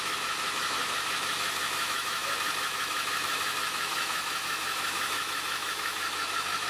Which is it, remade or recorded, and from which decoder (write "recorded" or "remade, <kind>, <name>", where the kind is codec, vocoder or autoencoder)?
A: remade, autoencoder, DAC-VAE